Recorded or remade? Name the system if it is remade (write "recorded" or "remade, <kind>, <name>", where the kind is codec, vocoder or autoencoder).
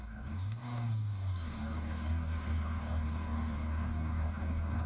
remade, codec, DAC